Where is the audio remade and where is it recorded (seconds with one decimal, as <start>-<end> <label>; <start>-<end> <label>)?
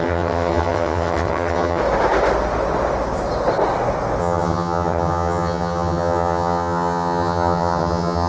0.0-1.8 remade; 1.8-4.2 recorded; 4.2-8.3 remade